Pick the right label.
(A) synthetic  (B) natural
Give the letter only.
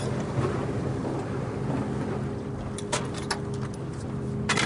B